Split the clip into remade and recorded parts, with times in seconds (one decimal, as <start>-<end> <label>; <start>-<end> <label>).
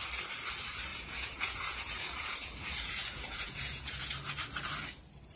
0.0-0.9 recorded; 0.9-4.1 remade; 4.1-5.4 recorded